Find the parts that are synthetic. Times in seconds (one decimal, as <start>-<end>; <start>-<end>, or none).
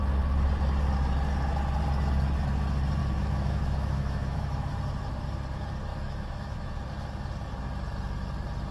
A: 3.0-4.7; 5.9-6.7